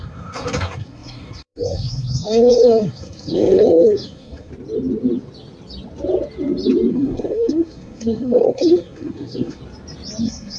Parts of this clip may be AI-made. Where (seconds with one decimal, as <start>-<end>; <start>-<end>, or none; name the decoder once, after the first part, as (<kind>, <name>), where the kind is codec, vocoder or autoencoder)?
0.0-4.5 (codec, SNAC); 6.9-9.6; 10.2-10.6